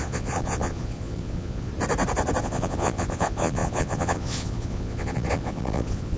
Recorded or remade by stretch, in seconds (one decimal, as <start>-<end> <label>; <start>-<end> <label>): 0.0-1.7 remade; 1.7-2.4 recorded; 2.4-6.2 remade